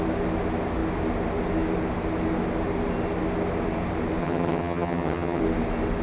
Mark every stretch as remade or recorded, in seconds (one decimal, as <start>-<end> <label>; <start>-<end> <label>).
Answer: 0.0-4.2 recorded; 4.2-5.4 remade; 5.4-6.0 recorded